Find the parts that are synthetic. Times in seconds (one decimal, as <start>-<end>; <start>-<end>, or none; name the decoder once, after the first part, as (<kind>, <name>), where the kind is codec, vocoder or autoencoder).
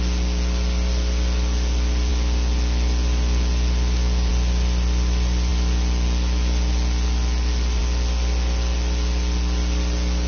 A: none